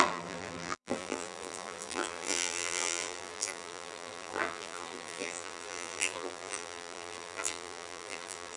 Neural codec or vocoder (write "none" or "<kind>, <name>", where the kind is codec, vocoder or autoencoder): vocoder, BigVGAN v2